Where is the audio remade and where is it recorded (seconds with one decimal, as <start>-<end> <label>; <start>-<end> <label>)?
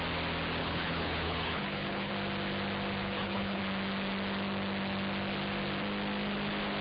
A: 0.0-0.6 recorded; 0.6-2.1 remade; 2.1-3.0 recorded; 3.0-3.6 remade; 3.6-6.8 recorded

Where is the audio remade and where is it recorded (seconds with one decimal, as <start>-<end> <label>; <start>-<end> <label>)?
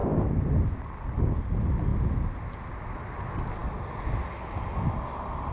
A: 0.0-5.5 recorded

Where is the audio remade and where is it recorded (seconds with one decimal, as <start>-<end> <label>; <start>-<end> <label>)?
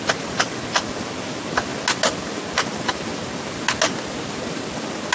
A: 0.0-5.1 recorded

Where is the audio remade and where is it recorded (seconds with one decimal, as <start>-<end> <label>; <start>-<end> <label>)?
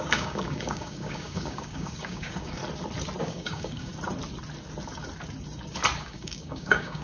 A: 0.0-2.6 remade; 2.6-3.2 recorded; 3.2-3.9 remade; 3.9-6.0 recorded; 6.0-7.0 remade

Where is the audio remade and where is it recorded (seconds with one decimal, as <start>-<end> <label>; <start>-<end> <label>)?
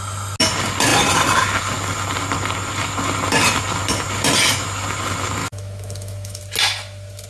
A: 0.0-5.4 recorded; 5.4-6.4 remade; 6.4-7.3 recorded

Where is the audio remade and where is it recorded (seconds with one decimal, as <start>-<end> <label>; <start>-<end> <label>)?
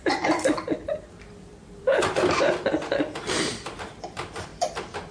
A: 0.0-5.1 remade